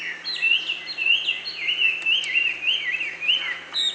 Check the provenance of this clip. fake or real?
real